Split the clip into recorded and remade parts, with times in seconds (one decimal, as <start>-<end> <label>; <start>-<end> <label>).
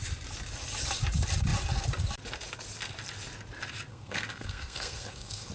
0.0-3.9 recorded; 3.9-5.5 remade